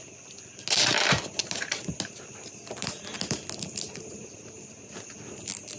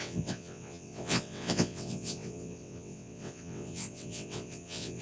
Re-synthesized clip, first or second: second